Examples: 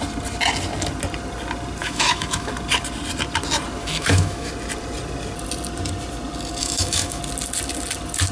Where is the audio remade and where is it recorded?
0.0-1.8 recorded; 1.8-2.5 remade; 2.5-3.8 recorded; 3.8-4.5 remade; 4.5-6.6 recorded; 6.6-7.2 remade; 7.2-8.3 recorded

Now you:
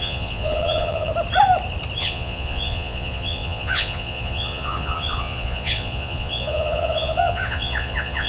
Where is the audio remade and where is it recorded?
0.0-1.1 remade; 1.1-2.0 recorded; 2.0-8.3 remade

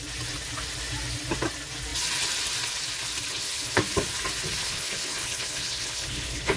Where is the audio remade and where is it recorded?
0.0-3.3 recorded; 3.3-3.8 remade; 3.8-4.6 recorded; 4.6-6.6 remade

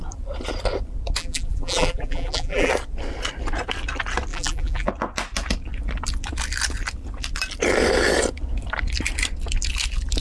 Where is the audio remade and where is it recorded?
0.0-1.2 recorded; 1.2-2.7 remade; 2.7-4.3 recorded; 4.3-4.9 remade; 4.9-10.2 recorded

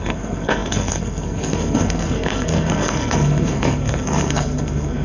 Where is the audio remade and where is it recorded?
0.0-5.0 remade